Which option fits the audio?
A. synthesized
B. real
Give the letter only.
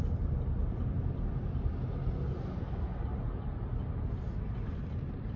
B